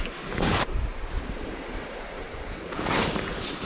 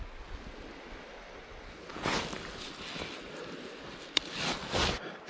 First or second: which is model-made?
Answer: first